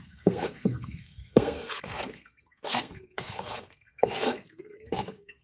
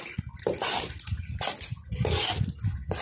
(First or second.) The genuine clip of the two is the second